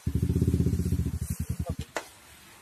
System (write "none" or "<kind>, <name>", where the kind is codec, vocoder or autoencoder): none